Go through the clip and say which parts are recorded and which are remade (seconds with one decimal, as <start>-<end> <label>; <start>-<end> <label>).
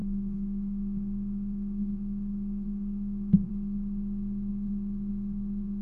0.0-3.5 remade; 3.5-5.8 recorded